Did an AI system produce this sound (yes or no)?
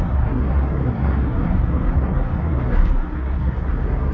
yes